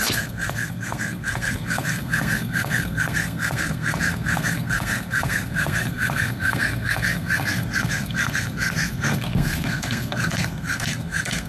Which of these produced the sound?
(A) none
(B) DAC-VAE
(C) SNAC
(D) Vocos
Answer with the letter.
C